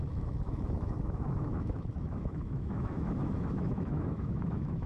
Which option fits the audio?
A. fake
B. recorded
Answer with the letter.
A